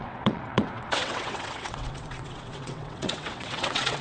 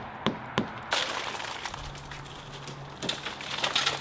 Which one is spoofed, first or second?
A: first